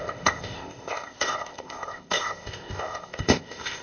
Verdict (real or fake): fake